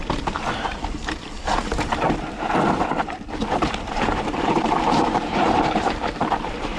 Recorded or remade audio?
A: remade